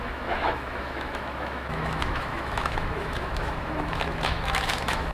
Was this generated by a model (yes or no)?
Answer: yes